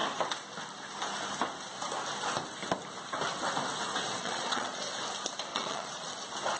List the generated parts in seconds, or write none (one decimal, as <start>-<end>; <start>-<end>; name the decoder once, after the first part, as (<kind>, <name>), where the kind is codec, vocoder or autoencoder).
4.2-4.8 (vocoder, Vocos); 5.5-6.1